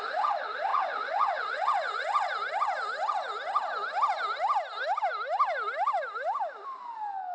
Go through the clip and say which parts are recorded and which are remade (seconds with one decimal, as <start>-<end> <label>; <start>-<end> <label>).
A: 0.0-7.3 recorded